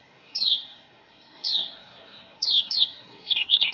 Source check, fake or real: fake